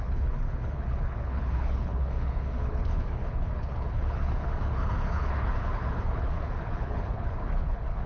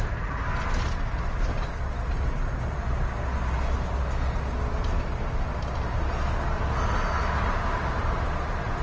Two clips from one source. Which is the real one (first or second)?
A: second